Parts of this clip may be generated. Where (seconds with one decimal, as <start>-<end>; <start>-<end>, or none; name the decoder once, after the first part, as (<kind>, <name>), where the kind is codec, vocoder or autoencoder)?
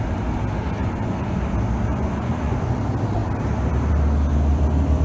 0.8-1.4 (vocoder, Vocos); 1.9-2.8